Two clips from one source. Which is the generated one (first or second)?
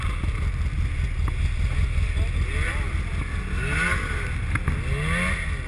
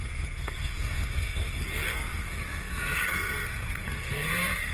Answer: second